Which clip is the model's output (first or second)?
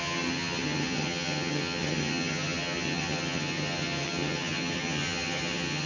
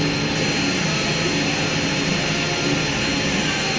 first